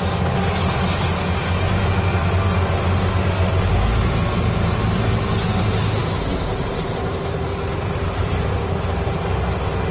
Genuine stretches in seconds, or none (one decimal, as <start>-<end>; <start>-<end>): 0.0-7.7; 8.3-9.9